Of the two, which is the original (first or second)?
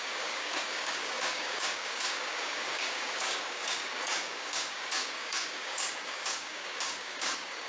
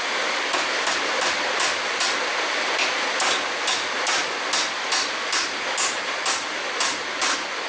second